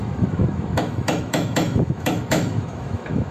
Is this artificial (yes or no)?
yes